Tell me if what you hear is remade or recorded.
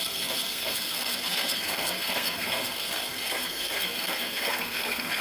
remade